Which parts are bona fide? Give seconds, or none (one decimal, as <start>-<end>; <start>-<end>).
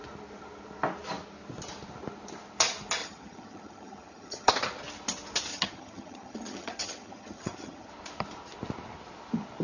0.0-3.0; 4.5-5.5; 7.9-9.6